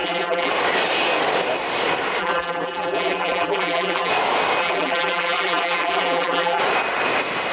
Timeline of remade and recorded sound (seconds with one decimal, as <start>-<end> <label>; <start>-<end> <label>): 0.0-0.5 remade; 0.5-2.2 recorded; 2.2-4.1 remade; 4.1-4.6 recorded; 4.6-6.6 remade; 6.6-7.5 recorded